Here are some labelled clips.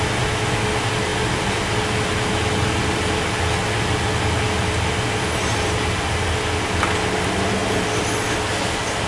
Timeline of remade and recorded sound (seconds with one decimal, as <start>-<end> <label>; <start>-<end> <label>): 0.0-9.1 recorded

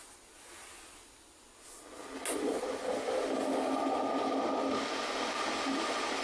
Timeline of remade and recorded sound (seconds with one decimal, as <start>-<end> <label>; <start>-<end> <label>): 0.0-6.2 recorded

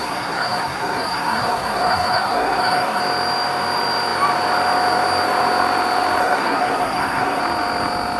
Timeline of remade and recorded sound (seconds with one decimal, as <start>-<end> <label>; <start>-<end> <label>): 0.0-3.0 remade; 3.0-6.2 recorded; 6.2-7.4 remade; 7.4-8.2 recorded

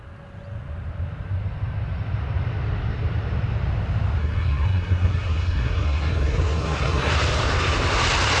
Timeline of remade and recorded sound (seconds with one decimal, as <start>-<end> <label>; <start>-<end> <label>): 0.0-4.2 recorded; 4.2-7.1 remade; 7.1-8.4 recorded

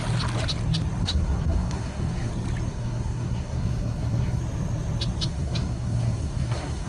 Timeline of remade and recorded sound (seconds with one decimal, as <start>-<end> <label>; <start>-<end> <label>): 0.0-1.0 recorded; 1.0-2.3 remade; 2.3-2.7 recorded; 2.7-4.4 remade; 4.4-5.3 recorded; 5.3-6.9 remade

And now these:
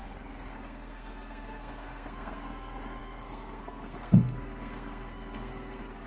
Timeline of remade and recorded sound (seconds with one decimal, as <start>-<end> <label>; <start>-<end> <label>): 0.0-6.1 remade

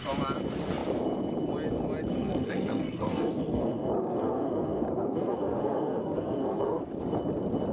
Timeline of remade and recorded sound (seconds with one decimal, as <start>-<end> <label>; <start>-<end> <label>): 0.0-2.2 recorded; 2.2-6.8 remade; 6.8-7.7 recorded